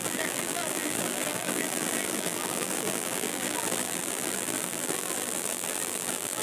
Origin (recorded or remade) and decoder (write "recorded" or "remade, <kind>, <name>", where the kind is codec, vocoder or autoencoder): remade, vocoder, BigVGAN v2